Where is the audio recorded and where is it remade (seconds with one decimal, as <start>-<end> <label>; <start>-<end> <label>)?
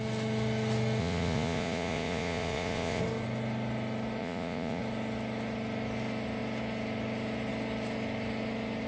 0.0-1.0 recorded; 1.0-3.0 remade; 3.0-4.2 recorded; 4.2-4.8 remade; 4.8-8.9 recorded